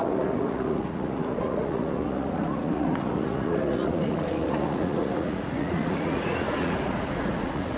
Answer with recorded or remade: remade